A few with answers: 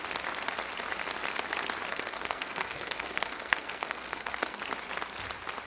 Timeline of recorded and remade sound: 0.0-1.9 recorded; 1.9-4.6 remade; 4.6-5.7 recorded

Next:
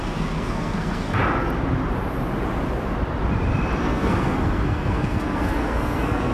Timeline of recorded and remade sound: 0.0-1.2 remade; 1.2-3.8 recorded; 3.8-6.3 remade

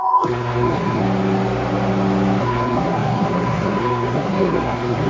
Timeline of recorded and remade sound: 0.0-1.0 remade; 1.0-2.4 recorded; 2.4-5.1 remade

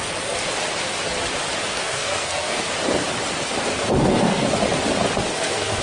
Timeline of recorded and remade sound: 0.0-1.7 recorded; 1.7-2.6 remade; 2.6-3.7 recorded; 3.7-4.5 remade; 4.5-5.3 recorded; 5.3-5.8 remade

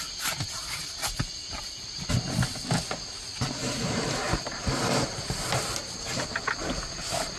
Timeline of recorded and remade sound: 0.0-7.4 recorded